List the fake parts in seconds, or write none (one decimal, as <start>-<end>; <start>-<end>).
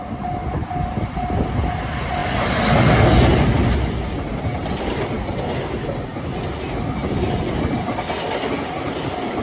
none